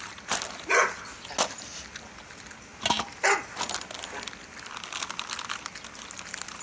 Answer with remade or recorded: recorded